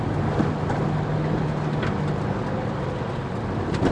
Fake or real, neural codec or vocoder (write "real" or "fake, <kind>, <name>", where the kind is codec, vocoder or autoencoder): real